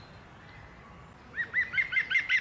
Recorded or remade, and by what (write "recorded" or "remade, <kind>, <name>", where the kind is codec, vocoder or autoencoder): recorded